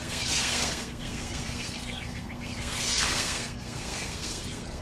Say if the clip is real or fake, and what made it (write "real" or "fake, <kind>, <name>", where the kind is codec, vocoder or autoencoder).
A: fake, codec, SNAC